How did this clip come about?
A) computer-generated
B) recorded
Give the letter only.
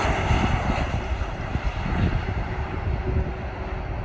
B